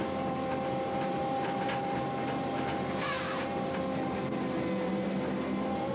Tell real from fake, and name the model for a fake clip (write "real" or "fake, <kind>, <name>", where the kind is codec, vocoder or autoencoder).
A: real